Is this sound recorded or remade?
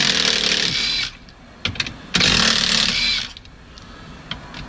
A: recorded